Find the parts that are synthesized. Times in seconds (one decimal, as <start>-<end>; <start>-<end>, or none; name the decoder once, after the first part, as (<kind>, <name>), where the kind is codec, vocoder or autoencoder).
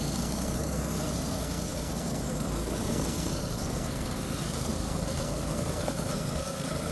0.0-6.9 (codec, SNAC)